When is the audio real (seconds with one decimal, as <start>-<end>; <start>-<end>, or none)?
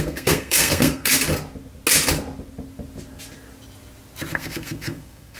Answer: 1.1-4.3